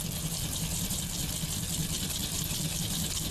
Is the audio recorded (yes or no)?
yes